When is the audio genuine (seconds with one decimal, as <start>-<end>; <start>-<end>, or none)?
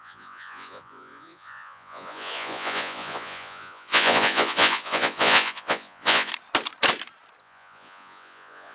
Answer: 6.3-7.4